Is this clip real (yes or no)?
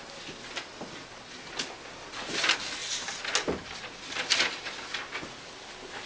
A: yes